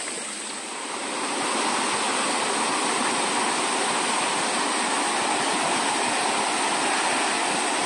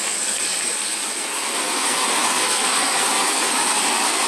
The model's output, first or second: second